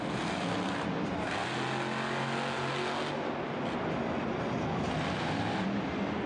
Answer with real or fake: real